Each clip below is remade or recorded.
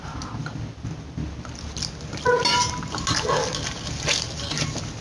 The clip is recorded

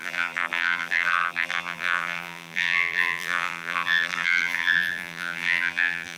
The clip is remade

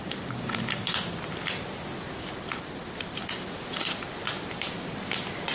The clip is remade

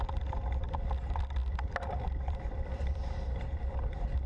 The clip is remade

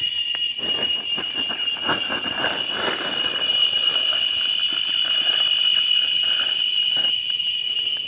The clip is remade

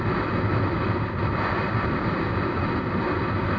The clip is recorded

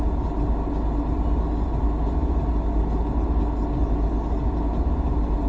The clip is recorded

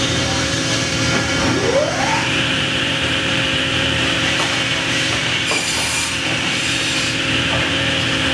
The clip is remade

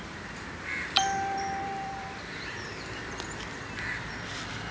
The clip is remade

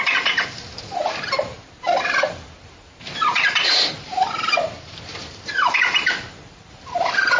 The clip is remade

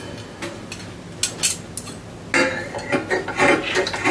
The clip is recorded